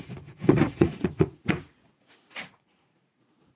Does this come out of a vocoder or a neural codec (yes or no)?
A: yes